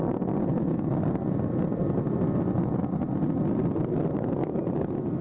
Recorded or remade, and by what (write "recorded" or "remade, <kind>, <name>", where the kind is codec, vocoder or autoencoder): recorded